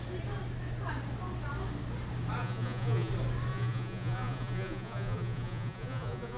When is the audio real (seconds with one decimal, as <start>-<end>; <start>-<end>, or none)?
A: 0.0-2.4; 3.1-3.5